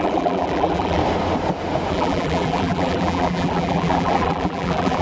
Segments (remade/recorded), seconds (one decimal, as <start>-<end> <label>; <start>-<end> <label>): 0.0-1.0 remade; 1.0-1.9 recorded; 1.9-5.0 remade